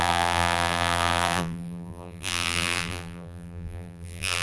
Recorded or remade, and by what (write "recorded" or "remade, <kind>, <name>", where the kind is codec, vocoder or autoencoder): remade, vocoder, BigVGAN v2